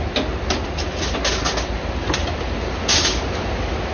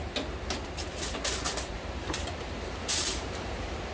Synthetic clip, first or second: second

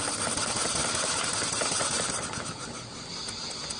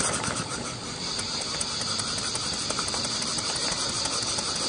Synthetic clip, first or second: second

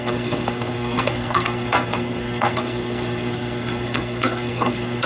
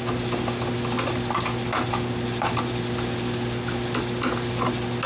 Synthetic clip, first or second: first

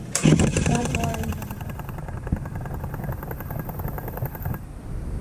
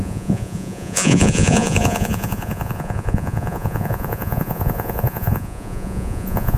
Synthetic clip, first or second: second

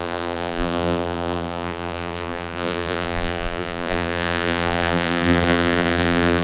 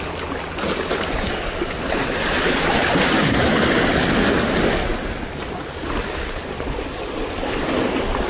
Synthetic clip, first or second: first